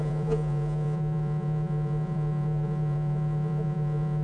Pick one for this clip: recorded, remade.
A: remade